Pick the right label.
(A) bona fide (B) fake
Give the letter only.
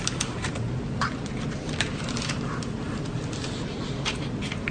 A